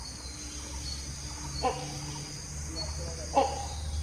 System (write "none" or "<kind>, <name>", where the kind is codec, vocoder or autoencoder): none